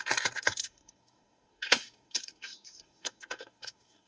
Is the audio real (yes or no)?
no